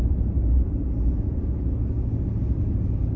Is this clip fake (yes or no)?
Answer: no